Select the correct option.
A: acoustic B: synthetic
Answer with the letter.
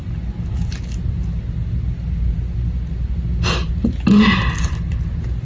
A